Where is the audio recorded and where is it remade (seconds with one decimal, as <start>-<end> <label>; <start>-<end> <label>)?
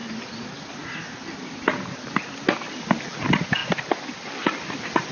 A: 0.0-5.1 recorded